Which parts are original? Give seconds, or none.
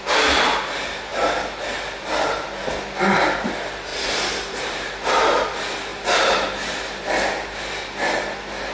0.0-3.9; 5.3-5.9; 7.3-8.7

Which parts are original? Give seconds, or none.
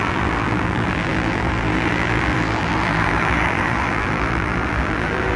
none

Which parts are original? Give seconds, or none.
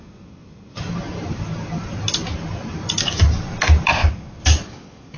0.0-0.4; 1.4-5.2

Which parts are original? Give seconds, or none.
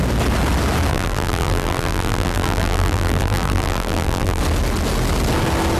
0.0-0.9; 4.4-5.8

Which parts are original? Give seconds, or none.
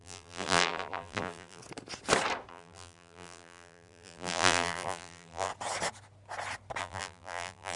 1.6-2.5; 5.5-6.8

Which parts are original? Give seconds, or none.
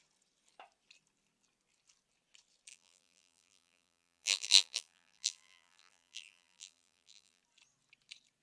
0.0-2.7; 7.4-8.4